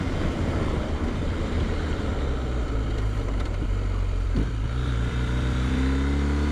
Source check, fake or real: fake